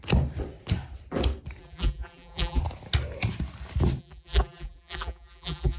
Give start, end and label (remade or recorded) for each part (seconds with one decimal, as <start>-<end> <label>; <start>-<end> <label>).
0.0-1.6 recorded; 1.6-2.6 remade; 2.6-4.0 recorded; 4.0-5.8 remade